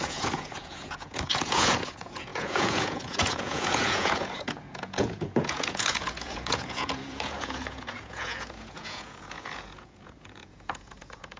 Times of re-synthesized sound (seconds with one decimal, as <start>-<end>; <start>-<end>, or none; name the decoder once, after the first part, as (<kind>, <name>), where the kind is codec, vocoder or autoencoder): 0.0-11.4 (vocoder, Vocos)